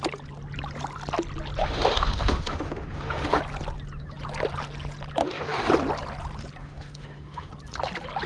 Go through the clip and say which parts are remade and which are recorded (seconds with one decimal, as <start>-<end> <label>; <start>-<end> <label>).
0.0-1.6 recorded; 1.6-3.4 remade; 3.4-5.2 recorded; 5.2-5.7 remade; 5.7-6.6 recorded; 6.6-7.5 remade; 7.5-8.3 recorded